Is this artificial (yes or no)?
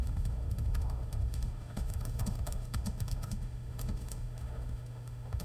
yes